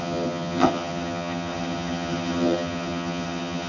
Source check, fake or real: fake